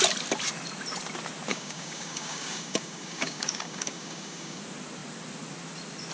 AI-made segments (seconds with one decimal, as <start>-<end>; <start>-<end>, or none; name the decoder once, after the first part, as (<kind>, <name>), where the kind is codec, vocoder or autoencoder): 1.5-4.6 (codec, DAC)